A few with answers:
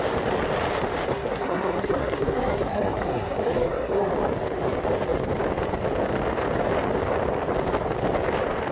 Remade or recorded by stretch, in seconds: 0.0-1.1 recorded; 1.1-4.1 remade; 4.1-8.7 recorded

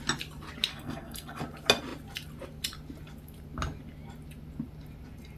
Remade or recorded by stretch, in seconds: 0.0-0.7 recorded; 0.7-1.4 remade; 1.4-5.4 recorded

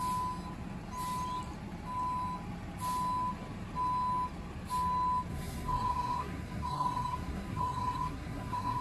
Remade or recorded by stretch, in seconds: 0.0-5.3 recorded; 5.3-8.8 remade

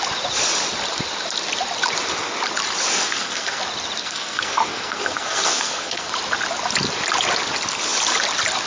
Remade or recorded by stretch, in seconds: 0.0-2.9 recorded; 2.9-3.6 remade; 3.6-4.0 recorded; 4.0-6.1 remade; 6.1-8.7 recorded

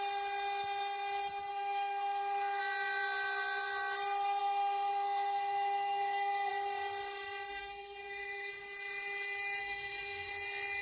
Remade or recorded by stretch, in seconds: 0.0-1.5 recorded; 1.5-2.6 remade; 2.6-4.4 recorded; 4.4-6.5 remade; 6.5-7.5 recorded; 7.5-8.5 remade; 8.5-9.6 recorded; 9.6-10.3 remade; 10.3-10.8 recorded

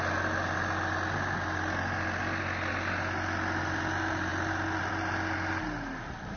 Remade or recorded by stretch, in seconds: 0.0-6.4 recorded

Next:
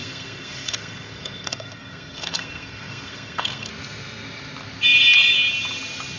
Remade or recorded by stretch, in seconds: 0.0-3.7 remade; 3.7-6.2 recorded